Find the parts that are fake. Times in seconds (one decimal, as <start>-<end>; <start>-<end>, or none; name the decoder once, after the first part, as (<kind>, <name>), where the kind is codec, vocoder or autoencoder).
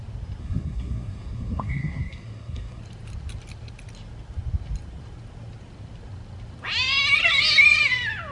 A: 0.4-2.8 (codec, SNAC)